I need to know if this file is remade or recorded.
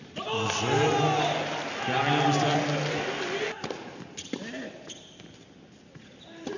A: recorded